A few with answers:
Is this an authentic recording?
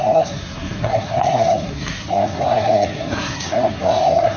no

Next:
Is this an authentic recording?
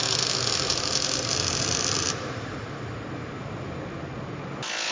yes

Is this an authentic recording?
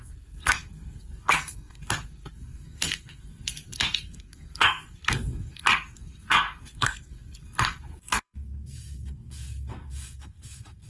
no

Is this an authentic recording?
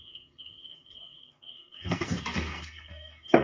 no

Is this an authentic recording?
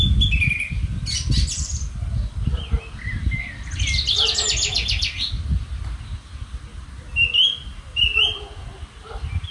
yes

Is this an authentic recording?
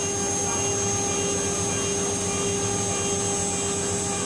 yes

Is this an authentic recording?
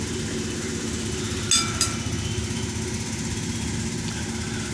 yes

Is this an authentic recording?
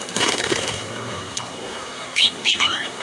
no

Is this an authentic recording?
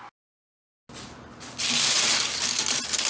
yes